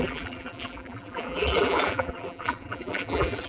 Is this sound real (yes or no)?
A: no